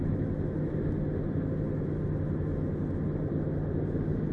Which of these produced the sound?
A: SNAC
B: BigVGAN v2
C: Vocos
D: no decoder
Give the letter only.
D